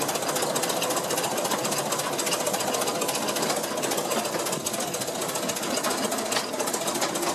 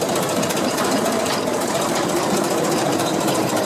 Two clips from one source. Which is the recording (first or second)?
first